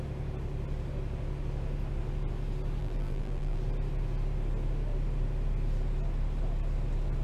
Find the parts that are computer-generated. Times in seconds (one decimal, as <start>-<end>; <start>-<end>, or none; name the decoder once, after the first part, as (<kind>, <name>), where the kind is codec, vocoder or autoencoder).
2.8-3.6 (vocoder, BigVGAN v2)